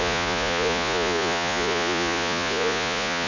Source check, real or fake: fake